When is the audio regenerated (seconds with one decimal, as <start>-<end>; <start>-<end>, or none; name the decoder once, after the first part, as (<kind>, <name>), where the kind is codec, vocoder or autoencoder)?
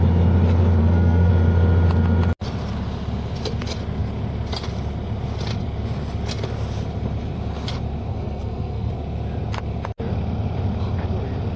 0.8-1.3 (codec, SNAC); 8.1-8.9